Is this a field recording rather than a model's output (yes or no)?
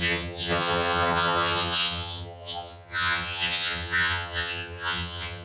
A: no